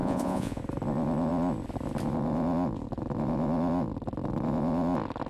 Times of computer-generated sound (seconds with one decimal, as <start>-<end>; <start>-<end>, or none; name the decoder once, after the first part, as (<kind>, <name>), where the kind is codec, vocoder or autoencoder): 0.0-0.6 (vocoder, Vocos)